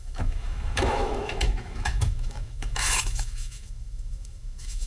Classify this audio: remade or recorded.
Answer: remade